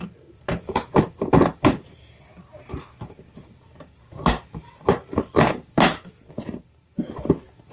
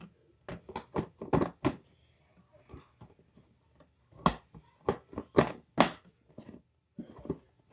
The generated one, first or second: first